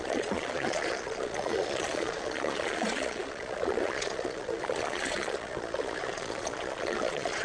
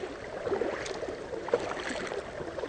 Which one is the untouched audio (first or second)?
second